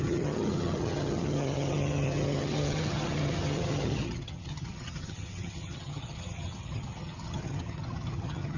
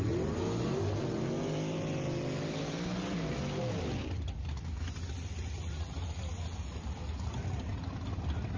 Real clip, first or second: second